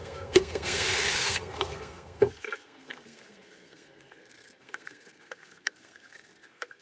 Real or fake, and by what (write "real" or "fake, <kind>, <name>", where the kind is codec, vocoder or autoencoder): fake, codec, SNAC